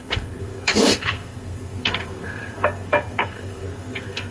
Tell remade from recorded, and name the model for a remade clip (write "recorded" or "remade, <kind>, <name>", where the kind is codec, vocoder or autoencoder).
remade, codec, SNAC